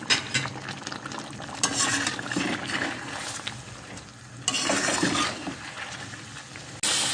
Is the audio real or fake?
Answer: real